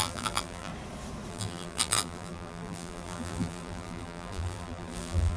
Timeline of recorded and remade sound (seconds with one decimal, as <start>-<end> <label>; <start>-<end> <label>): 0.0-0.7 remade; 0.7-1.3 recorded; 1.3-5.4 remade